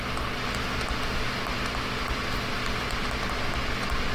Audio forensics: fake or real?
real